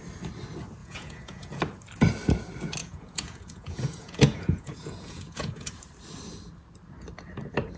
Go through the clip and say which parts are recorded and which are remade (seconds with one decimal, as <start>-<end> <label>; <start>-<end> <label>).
0.0-0.8 recorded; 0.8-1.6 remade; 1.6-2.8 recorded; 2.8-5.7 remade; 5.7-7.8 recorded